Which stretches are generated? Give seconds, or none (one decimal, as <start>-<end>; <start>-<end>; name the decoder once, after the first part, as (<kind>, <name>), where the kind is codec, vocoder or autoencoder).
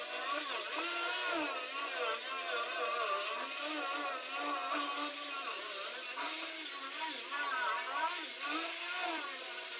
5.1-6.7 (vocoder, BigVGAN v2); 9.0-9.8